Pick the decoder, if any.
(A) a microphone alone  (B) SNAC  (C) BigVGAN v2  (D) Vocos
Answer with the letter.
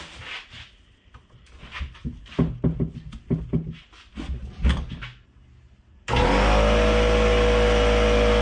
A